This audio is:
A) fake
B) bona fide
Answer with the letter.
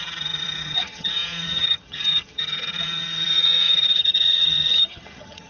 A